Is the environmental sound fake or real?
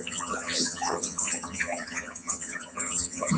fake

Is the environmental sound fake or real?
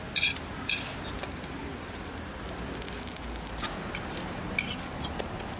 real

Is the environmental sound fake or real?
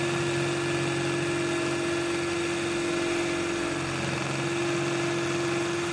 real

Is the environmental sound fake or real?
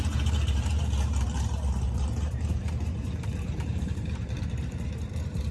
fake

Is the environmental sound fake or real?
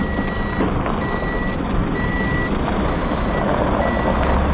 real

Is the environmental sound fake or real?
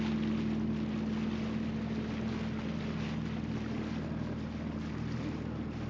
real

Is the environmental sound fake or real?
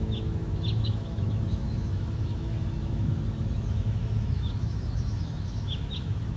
fake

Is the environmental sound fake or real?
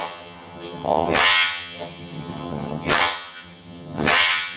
fake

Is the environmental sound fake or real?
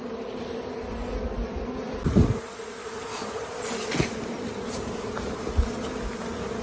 real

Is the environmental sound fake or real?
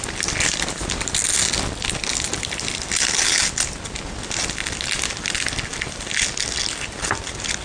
real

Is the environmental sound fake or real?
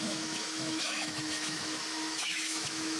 fake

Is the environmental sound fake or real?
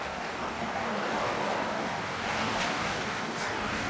fake